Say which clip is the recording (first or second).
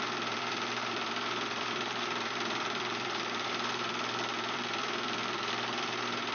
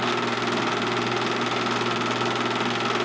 second